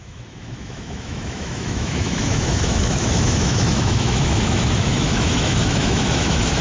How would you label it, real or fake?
fake